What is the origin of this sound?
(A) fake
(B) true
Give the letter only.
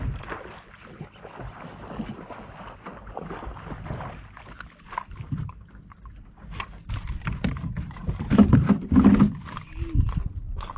B